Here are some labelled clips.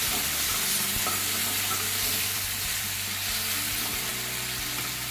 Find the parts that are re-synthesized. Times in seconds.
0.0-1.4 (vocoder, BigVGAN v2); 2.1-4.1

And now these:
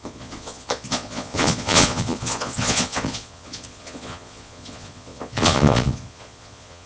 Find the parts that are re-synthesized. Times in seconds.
0.0-6.9 (vocoder, Vocos)

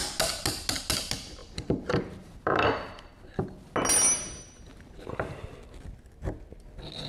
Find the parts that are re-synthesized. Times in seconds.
1.4-3.1 (vocoder, BigVGAN v2)

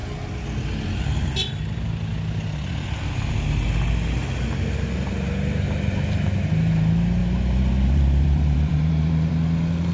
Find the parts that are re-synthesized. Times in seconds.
7.2-9.3 (vocoder, BigVGAN v2)

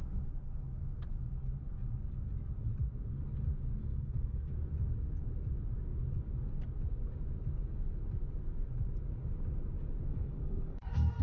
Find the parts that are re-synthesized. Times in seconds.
3.8-4.5 (codec, SNAC); 10.1-11.2

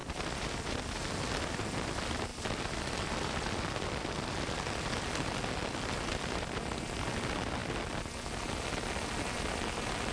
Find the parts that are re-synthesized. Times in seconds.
0.0-0.7 (vocoder, BigVGAN v2)